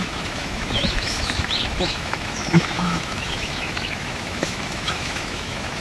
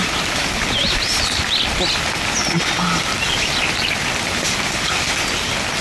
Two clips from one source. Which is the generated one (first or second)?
first